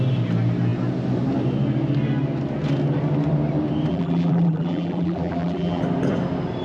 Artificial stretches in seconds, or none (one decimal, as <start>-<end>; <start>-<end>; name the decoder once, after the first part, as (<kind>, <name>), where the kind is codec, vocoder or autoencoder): 3.9-5.8 (vocoder, BigVGAN v2)